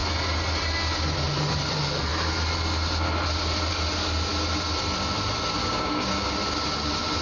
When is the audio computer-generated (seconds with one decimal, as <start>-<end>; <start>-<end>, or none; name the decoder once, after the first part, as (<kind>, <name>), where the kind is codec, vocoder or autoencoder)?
5.6-6.3 (codec, DAC)